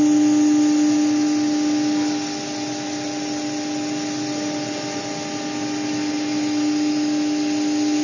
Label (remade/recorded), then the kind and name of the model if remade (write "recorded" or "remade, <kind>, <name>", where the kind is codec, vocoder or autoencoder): recorded